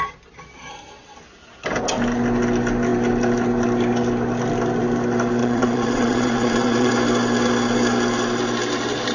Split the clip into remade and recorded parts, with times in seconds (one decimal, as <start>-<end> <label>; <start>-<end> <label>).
0.0-5.4 recorded; 5.4-6.9 remade; 6.9-9.1 recorded